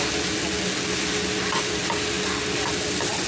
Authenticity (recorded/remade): recorded